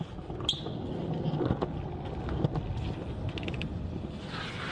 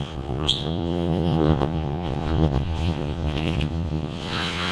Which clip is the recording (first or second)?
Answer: first